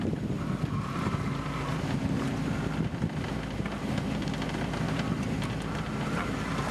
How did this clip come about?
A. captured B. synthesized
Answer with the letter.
A